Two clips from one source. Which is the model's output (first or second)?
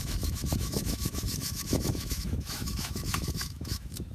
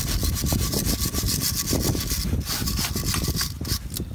first